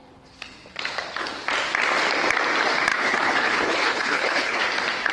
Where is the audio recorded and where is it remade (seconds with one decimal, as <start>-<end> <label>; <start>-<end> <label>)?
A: 0.0-2.9 recorded; 2.9-4.6 remade; 4.6-5.1 recorded